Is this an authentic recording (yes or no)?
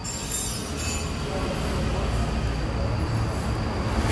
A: yes